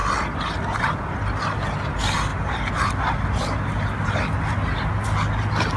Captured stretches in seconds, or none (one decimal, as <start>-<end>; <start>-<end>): 0.0-5.8